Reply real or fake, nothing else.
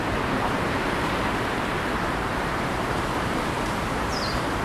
fake